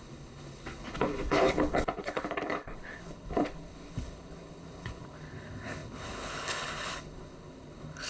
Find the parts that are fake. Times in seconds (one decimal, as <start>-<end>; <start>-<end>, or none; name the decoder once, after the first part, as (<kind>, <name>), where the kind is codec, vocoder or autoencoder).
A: 0.0-8.1 (codec, HILCodec)